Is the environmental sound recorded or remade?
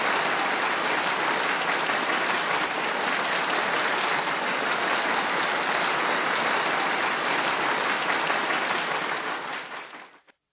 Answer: recorded